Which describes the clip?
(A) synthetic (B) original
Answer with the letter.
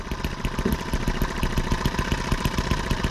B